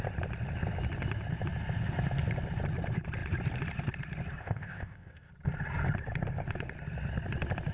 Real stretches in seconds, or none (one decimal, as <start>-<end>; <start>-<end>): 0.0-4.4; 5.3-7.7